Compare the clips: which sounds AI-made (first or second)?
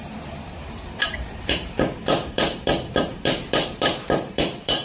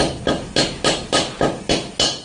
first